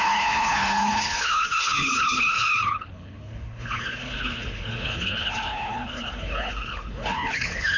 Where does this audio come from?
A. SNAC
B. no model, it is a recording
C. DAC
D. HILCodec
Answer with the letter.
D